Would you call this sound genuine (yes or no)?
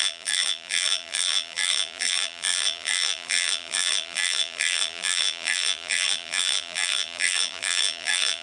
no